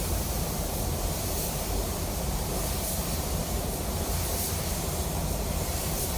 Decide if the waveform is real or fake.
fake